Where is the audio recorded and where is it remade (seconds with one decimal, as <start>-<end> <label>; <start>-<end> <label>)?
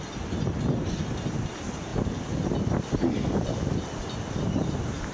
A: 0.0-5.1 recorded